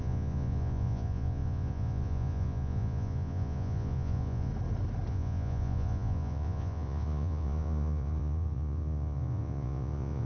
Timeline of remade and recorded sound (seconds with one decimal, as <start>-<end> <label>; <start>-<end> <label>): 0.0-4.5 remade; 4.5-5.1 recorded; 5.1-10.3 remade